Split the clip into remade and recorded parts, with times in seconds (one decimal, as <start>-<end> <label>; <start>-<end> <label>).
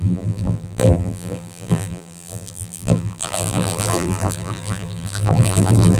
0.0-6.0 remade